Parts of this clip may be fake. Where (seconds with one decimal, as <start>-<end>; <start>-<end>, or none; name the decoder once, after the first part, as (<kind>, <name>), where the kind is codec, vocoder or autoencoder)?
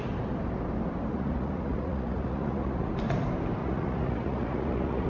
1.1-2.9 (vocoder, Vocos); 3.6-5.1